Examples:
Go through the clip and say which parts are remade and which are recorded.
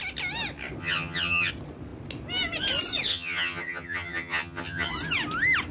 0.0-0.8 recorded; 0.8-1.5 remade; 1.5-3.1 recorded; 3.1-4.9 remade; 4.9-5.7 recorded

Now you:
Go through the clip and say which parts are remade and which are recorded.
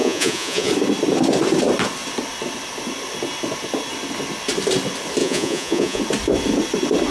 0.0-0.7 remade; 0.7-5.2 recorded; 5.2-6.0 remade; 6.0-7.1 recorded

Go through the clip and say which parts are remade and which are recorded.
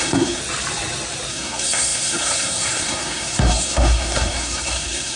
0.0-0.4 remade; 0.4-1.3 recorded; 1.3-5.2 remade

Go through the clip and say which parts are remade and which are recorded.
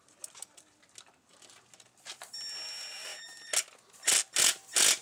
0.0-5.0 recorded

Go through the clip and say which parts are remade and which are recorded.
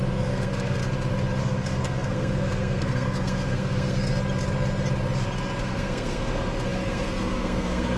0.0-0.8 remade; 0.8-1.4 recorded; 1.4-4.1 remade; 4.1-5.6 recorded; 5.6-8.0 remade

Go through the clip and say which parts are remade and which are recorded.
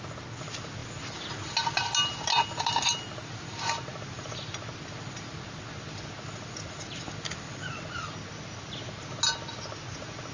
0.0-10.3 recorded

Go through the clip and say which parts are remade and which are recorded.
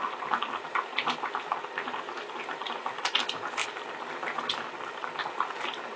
0.0-6.0 recorded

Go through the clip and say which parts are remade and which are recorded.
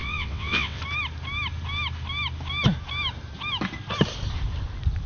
0.0-0.8 remade; 0.8-5.1 recorded